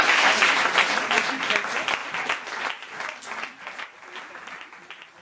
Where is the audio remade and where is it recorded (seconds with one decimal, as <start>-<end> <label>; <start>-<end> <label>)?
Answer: 0.0-5.2 recorded